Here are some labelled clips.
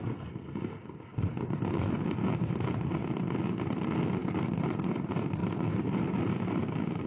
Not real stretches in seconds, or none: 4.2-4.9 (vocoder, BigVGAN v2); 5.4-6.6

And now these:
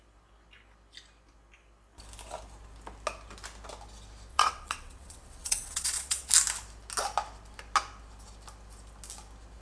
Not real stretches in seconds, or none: 4.3-6.3 (vocoder, WaveNeXt)

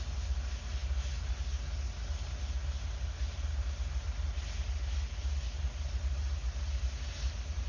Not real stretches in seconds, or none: none

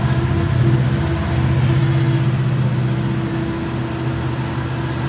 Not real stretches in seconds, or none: none

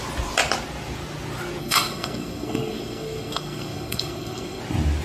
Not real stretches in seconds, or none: 1.6-4.6 (codec, SNAC)